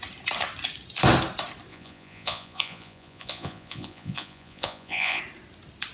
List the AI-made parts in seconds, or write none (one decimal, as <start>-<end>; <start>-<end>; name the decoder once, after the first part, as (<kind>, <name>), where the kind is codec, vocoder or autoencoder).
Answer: 1.7-5.2 (vocoder, Vocos)